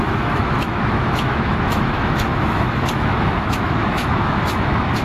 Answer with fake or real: fake